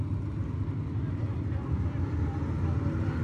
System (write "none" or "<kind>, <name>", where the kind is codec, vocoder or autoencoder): none